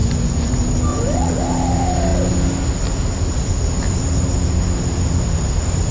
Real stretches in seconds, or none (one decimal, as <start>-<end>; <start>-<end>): 0.5-0.9; 1.4-5.9